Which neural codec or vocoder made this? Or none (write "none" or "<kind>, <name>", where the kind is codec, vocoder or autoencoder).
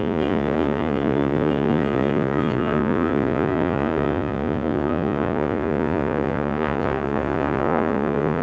vocoder, Vocos